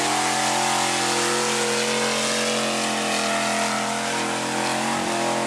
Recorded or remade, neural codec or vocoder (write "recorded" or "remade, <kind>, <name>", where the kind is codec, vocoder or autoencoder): recorded